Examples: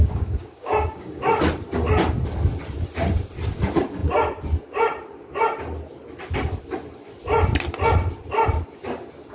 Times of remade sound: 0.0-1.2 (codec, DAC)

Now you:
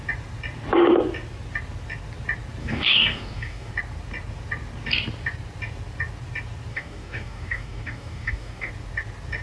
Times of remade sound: 2.6-3.7 (codec, DAC); 6.7-8.7

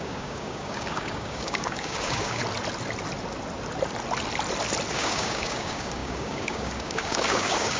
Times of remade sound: 0.0-2.4 (codec, DAC); 4.9-7.8

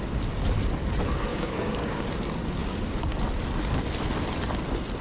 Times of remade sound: 1.3-2.1 (codec, DAC)

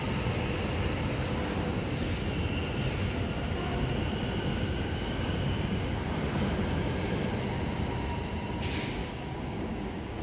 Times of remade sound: 4.5-6.1 (codec, DAC); 9.0-10.2